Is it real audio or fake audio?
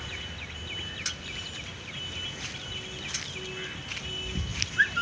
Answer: real